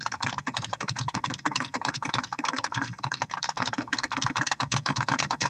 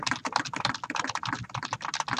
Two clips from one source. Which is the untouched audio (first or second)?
second